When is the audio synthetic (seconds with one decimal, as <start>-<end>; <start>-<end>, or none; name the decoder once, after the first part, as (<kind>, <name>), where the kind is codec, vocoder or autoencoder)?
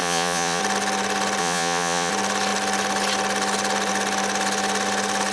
0.0-0.6 (vocoder, Vocos); 1.4-2.1